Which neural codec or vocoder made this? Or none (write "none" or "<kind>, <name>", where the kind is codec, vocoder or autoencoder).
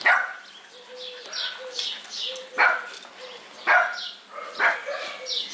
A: none